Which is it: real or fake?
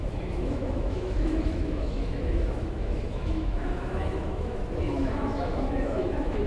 fake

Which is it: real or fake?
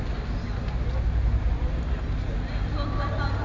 real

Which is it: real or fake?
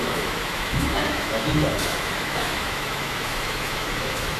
fake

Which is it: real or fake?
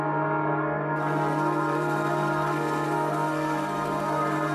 fake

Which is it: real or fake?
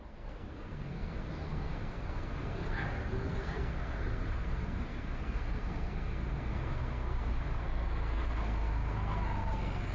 fake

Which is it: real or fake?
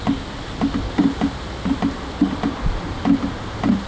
real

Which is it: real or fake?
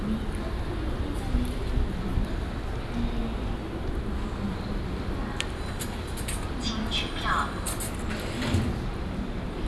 real